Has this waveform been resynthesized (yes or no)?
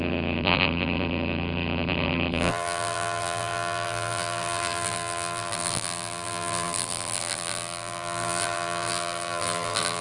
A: yes